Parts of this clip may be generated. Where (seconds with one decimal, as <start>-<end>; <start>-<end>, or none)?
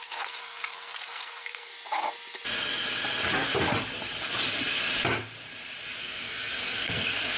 0.0-1.7; 6.0-7.4